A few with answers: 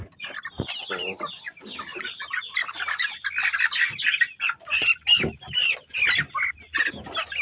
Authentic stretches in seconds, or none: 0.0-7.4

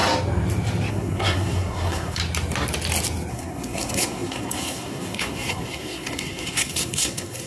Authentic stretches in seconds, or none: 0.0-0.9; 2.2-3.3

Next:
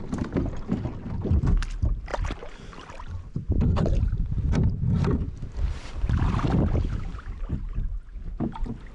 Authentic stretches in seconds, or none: 0.0-2.1; 7.1-8.9

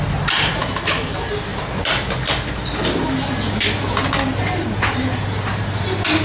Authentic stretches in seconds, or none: 0.0-0.6; 1.1-6.2

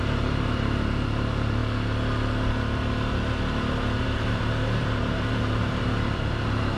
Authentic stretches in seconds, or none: 1.6-4.0